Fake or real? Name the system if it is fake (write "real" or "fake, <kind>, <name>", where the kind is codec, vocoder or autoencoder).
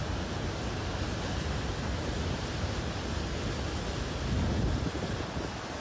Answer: real